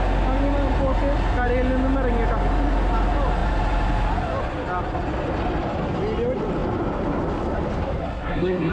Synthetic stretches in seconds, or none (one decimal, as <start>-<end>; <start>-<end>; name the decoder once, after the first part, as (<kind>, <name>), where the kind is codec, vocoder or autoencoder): 8.0-8.7 (codec, SNAC)